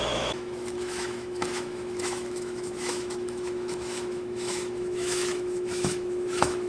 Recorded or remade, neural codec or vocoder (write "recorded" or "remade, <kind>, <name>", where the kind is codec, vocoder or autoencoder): remade, autoencoder, DAC-VAE